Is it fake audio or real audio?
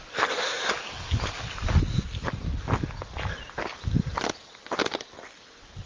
real